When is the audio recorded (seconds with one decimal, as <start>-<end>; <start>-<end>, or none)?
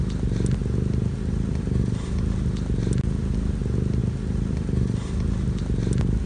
0.0-6.3